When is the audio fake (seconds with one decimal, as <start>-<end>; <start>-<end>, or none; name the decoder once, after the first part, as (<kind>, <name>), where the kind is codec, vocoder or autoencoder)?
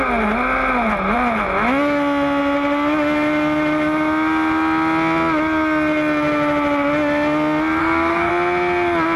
7.8-8.3 (codec, SNAC)